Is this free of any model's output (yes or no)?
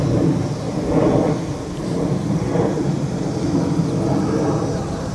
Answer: yes